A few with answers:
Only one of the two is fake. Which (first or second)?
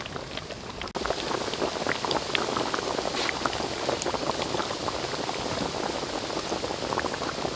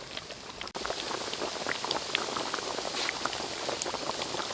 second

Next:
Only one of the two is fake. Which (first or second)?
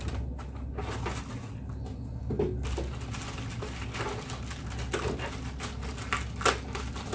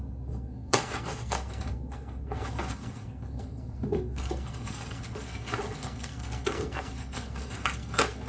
second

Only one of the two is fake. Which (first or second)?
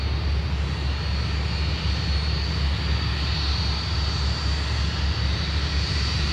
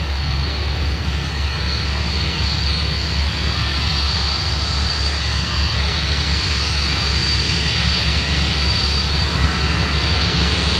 second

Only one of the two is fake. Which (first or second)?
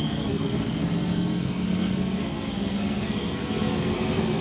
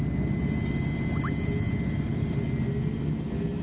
first